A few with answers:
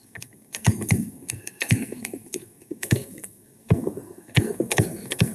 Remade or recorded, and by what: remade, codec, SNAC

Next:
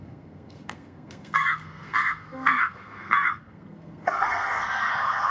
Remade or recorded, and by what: remade, codec, SNAC